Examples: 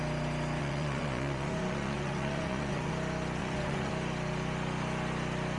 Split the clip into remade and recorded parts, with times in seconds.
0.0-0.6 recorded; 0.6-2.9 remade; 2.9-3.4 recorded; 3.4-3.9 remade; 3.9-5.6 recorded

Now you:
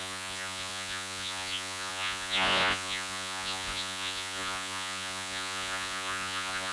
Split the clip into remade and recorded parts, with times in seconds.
0.0-6.7 remade

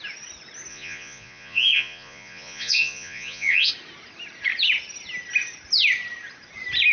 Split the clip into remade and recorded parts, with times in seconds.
0.0-0.7 recorded; 0.7-3.7 remade; 3.7-6.9 recorded

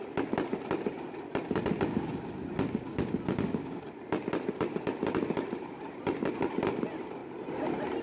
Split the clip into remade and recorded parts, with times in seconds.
0.0-8.0 recorded

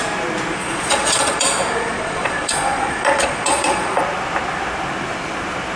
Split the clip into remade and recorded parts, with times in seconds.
0.0-0.6 recorded; 0.6-4.0 remade; 4.0-5.8 recorded

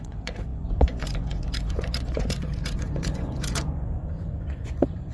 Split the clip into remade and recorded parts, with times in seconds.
0.0-5.1 remade

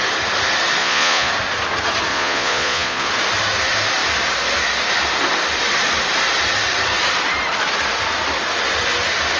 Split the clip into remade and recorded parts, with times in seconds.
0.0-0.8 recorded; 0.8-1.3 remade; 1.3-2.1 recorded; 2.1-3.1 remade; 3.1-9.4 recorded

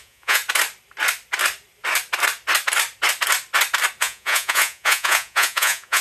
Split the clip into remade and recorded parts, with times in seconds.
0.0-0.4 remade; 0.4-4.0 recorded; 4.0-6.0 remade